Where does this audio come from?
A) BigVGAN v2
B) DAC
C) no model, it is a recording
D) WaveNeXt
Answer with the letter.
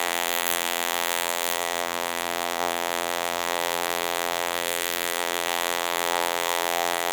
A